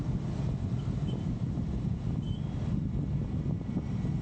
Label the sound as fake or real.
real